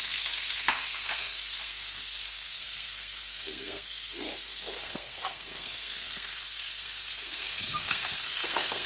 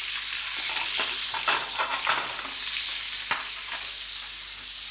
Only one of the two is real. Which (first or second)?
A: second